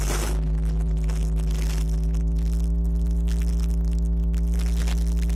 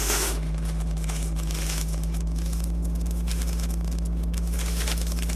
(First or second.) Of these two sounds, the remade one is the second